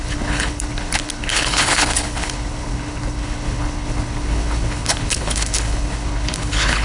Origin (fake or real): fake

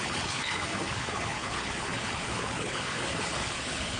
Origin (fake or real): fake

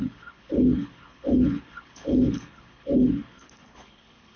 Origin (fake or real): fake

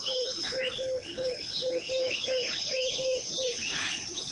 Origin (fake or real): fake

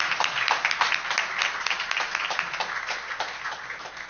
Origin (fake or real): real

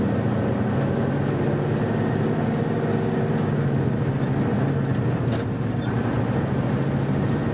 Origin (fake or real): real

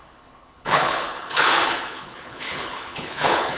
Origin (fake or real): fake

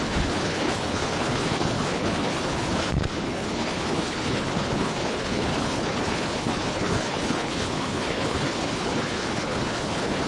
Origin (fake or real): fake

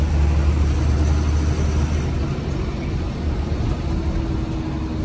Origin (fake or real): real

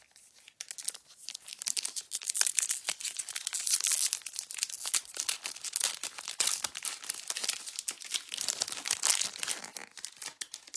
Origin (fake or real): real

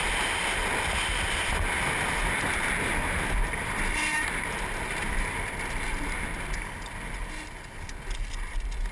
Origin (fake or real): real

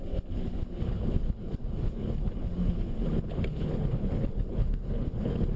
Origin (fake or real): fake